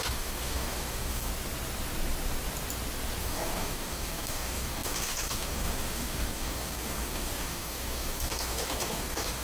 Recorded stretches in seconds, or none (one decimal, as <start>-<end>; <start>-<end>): 1.3-3.2